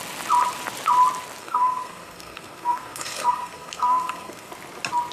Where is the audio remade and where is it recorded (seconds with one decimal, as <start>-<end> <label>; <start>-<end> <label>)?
0.0-1.4 recorded; 1.4-4.5 remade; 4.5-5.1 recorded